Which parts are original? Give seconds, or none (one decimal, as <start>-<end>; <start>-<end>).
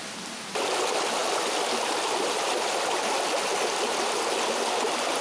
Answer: 0.0-5.2